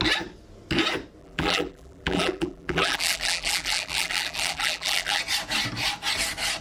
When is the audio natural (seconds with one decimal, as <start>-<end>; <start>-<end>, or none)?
0.0-1.2; 5.2-6.6